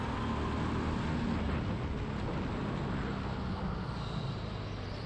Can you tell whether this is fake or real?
real